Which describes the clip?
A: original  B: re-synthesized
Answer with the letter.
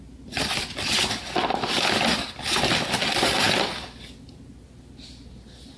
A